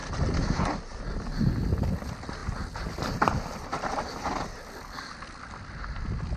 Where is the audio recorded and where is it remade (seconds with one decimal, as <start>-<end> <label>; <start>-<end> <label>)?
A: 0.0-1.0 recorded; 1.0-6.4 remade